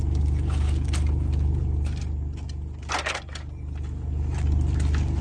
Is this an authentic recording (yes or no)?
yes